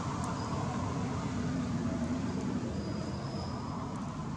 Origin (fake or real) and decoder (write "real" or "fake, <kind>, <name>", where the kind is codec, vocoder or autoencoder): real